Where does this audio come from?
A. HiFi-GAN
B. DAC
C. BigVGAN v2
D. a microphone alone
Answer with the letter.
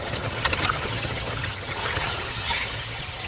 A